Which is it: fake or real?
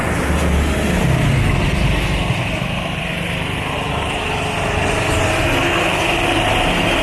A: real